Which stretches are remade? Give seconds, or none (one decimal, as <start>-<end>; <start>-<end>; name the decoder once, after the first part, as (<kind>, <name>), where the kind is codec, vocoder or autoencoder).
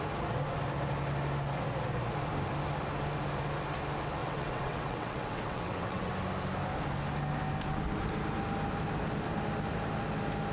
4.2-6.1 (vocoder, WaveNeXt)